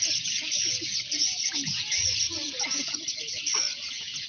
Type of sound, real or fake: fake